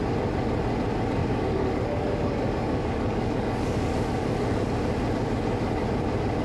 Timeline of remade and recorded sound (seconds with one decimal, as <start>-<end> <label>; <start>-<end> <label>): 0.0-1.2 recorded; 1.2-4.7 remade; 4.7-6.4 recorded

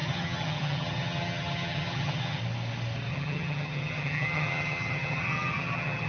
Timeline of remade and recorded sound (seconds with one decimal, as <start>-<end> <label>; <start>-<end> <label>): 0.0-2.4 remade; 2.4-3.1 recorded; 3.1-6.1 remade

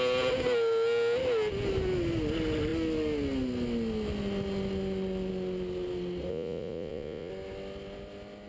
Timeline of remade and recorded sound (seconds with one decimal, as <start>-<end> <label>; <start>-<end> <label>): 0.0-6.3 recorded; 6.3-7.3 remade; 7.3-8.5 recorded

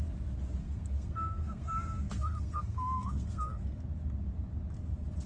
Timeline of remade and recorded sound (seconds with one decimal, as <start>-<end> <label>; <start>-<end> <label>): 0.0-0.6 recorded; 0.6-3.8 remade; 3.8-5.3 recorded